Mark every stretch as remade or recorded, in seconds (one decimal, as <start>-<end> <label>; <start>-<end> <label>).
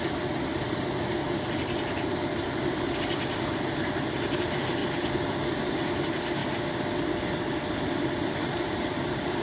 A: 0.0-1.2 remade; 1.2-3.7 recorded; 3.7-4.8 remade; 4.8-5.6 recorded; 5.6-6.4 remade; 6.4-8.3 recorded; 8.3-9.4 remade